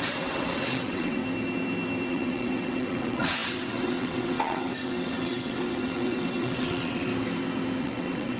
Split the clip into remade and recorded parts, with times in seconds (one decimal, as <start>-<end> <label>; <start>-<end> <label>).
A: 0.0-1.2 remade; 1.2-2.1 recorded; 2.1-7.1 remade; 7.1-7.8 recorded; 7.8-8.4 remade